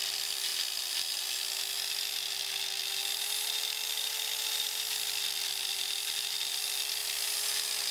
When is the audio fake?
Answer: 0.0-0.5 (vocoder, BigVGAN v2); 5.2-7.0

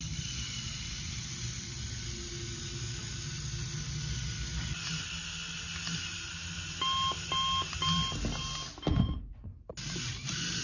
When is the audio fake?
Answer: 8.9-9.7 (vocoder, Vocos)

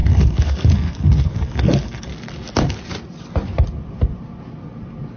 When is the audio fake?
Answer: 0.0-2.1 (codec, SNAC)

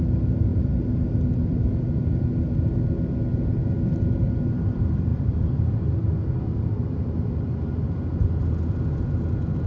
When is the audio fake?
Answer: 0.5-1.7 (vocoder, BigVGAN v2); 5.1-7.7

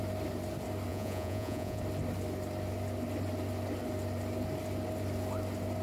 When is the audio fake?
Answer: 0.9-1.8 (vocoder, Vocos)

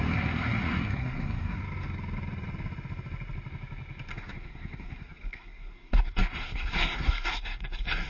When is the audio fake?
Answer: 0.0-1.6 (codec, SNAC); 4.1-8.1